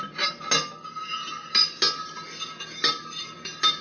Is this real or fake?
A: real